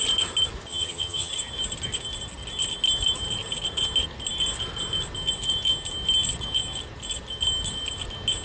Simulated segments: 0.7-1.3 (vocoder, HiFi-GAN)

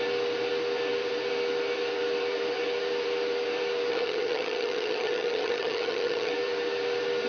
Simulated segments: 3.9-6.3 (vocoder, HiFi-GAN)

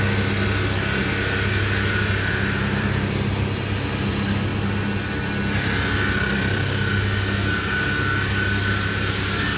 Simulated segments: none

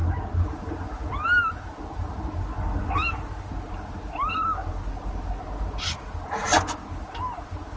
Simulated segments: none

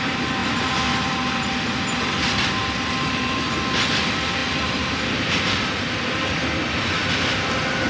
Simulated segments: none

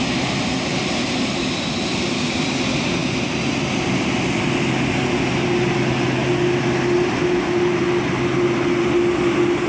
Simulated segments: none